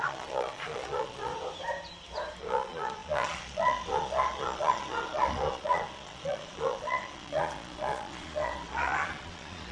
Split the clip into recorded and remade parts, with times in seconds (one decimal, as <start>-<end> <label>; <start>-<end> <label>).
0.0-1.3 remade; 1.3-2.4 recorded; 2.4-9.7 remade